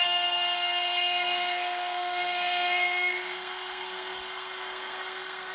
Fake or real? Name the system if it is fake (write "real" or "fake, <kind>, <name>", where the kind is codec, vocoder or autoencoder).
fake, codec, SNAC